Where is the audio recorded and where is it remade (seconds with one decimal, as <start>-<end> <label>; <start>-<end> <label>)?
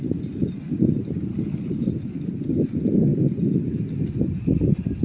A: 0.0-1.3 recorded; 1.3-1.9 remade; 1.9-5.0 recorded